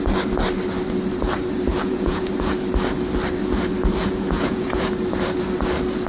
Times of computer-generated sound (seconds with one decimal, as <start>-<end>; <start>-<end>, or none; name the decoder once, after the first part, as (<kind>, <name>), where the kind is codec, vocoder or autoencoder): 1.7-2.3 (vocoder, Vocos); 4.0-4.9